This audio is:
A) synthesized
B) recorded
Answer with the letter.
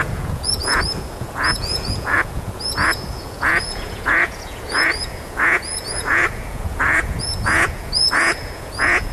A